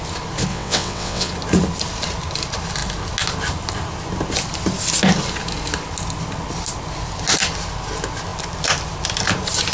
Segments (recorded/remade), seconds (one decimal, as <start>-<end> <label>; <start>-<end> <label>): 0.0-0.5 recorded; 0.5-1.3 remade; 1.3-9.7 recorded